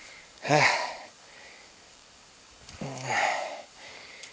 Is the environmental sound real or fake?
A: fake